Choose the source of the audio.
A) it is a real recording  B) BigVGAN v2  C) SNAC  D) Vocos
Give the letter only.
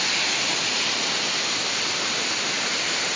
A